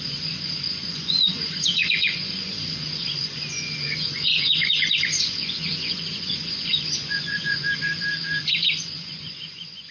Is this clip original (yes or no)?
no